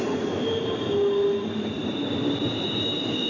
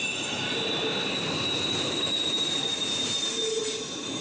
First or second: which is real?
first